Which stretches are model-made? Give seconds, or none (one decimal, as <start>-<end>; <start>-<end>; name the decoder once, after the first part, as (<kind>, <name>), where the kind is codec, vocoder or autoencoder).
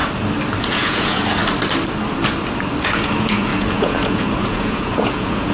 0.6-1.4 (vocoder, Vocos); 2.8-5.5